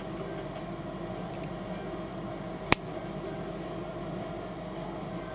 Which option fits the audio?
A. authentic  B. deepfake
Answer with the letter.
A